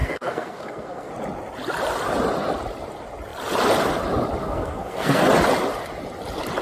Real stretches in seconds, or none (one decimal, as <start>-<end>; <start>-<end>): 1.1-4.4; 5.2-6.6